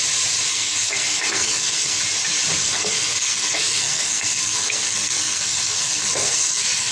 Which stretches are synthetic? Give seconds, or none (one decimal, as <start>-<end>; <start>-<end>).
0.5-2.0; 2.6-6.9